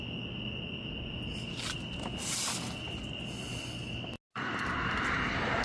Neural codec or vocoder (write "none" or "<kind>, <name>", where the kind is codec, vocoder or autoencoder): none